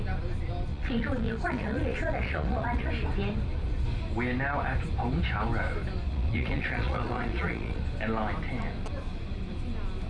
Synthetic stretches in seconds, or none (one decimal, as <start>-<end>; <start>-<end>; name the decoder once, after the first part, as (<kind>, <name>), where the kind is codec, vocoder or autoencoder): 0.7-2.9 (vocoder, Vocos); 6.1-7.8